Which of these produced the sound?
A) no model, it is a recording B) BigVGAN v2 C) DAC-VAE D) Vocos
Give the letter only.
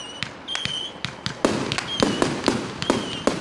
A